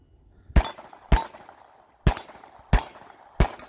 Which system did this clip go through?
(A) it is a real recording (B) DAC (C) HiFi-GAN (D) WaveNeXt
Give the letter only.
A